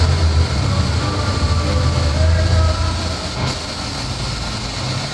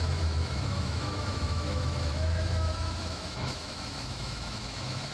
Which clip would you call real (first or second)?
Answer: first